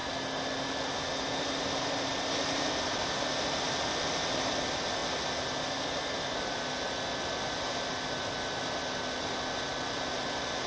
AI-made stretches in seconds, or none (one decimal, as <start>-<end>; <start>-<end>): none